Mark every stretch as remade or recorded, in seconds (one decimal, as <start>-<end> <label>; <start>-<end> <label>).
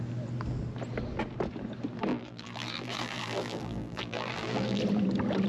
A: 0.0-2.1 recorded; 2.1-4.8 remade; 4.8-5.5 recorded